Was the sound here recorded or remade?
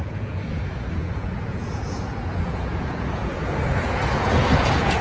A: remade